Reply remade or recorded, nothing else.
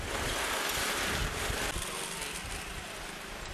recorded